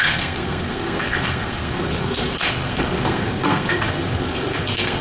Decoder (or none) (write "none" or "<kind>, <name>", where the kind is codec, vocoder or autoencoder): codec, SNAC